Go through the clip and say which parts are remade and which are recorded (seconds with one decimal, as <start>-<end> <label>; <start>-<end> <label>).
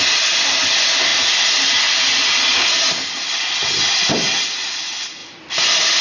0.0-5.2 recorded; 5.2-6.0 remade